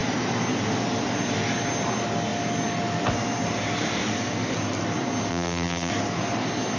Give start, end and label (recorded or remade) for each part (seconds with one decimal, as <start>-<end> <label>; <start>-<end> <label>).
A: 0.0-5.3 recorded; 5.3-5.9 remade; 5.9-6.8 recorded